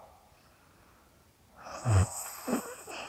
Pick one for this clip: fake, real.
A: real